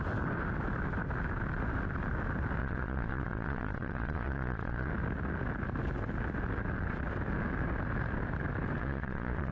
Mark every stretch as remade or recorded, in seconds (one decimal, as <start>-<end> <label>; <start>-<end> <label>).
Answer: 0.0-2.6 recorded; 2.6-4.9 remade; 4.9-8.8 recorded; 8.8-9.5 remade